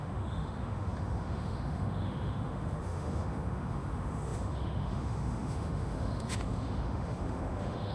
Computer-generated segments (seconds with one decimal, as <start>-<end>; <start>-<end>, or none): 0.0-7.9